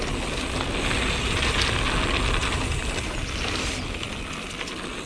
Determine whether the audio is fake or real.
real